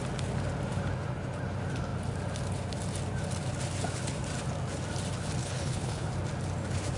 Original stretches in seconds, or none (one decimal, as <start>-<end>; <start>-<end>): 0.0-5.4; 6.1-7.0